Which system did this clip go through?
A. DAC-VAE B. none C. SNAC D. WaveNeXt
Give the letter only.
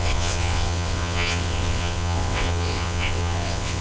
D